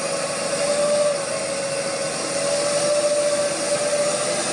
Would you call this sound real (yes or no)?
yes